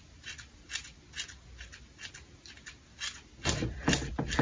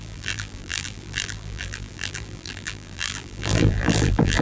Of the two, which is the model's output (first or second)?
second